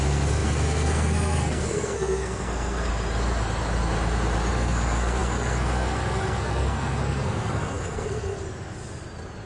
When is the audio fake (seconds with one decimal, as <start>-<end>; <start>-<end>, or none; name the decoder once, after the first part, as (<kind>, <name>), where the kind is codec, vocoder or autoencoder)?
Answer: 0.0-2.9 (codec, SNAC); 4.5-8.4